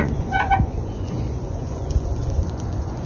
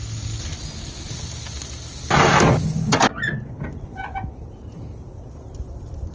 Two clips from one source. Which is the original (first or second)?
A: second